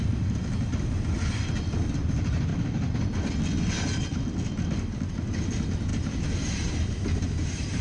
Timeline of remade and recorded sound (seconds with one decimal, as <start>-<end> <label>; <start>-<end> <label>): 0.0-5.9 recorded; 5.9-7.8 remade